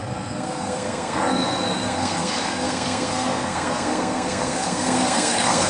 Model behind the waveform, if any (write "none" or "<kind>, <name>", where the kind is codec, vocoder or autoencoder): codec, SNAC